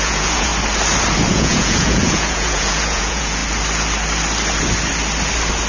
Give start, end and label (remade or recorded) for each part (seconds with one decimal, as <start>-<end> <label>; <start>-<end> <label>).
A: 0.0-0.5 remade; 0.5-1.3 recorded; 1.3-3.4 remade; 3.4-5.7 recorded